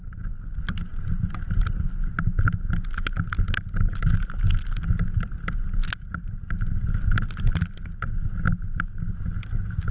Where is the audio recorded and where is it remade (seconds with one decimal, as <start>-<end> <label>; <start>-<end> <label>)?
0.0-9.9 recorded